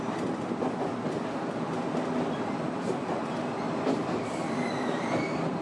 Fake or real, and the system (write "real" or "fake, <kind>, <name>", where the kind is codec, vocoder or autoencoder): fake, vocoder, BigVGAN v2